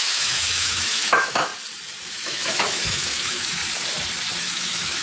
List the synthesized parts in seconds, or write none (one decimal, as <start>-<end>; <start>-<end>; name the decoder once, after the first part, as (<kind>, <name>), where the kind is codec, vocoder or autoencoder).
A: 0.0-1.5 (autoencoder, DAC-VAE); 2.1-3.6; 4.4-5.0